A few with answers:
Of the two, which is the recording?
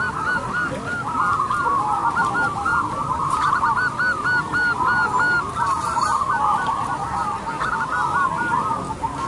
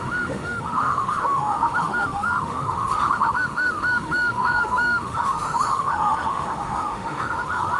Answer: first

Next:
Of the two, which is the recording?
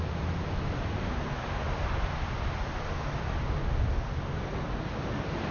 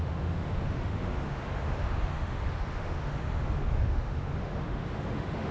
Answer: first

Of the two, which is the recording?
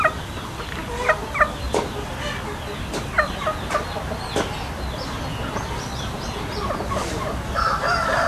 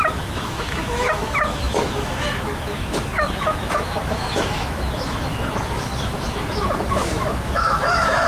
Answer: first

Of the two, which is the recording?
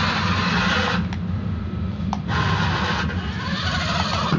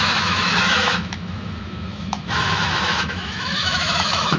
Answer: first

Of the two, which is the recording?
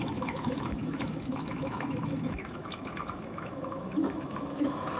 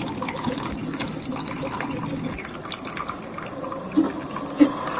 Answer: second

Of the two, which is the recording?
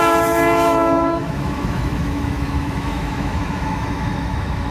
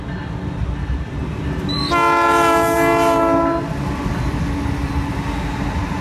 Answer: second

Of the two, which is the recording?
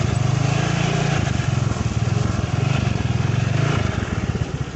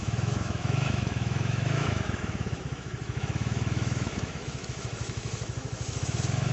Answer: first